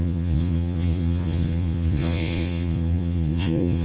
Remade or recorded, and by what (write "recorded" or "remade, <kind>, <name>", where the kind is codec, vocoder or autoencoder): remade, vocoder, Vocos